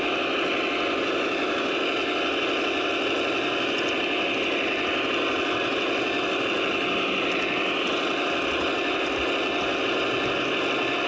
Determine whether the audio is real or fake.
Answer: real